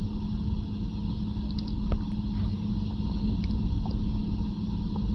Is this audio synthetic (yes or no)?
no